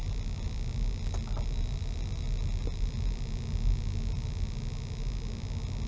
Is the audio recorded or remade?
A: recorded